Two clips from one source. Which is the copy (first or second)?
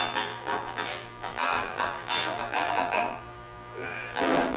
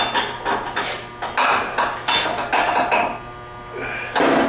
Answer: first